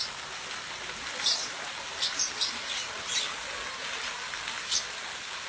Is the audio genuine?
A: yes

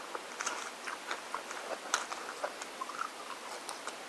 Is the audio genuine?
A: yes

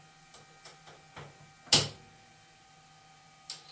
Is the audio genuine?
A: yes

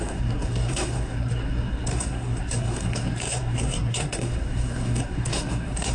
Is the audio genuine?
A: no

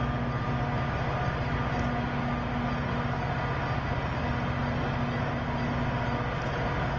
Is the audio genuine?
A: yes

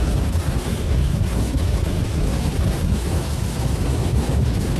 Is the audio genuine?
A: no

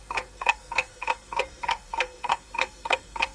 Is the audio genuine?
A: no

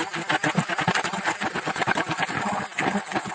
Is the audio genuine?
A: yes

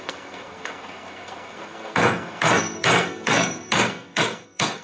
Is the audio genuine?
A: no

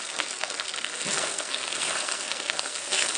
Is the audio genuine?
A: no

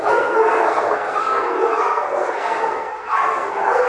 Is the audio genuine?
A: no